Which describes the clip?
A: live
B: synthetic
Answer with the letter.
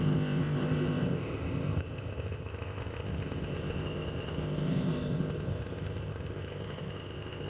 B